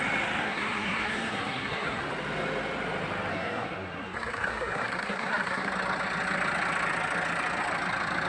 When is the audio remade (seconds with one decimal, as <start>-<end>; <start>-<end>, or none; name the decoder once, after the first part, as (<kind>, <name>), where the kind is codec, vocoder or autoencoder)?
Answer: 0.4-2.1 (codec, SNAC); 3.3-5.7